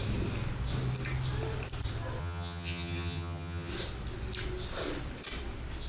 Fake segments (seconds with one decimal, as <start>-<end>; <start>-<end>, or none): 2.2-3.7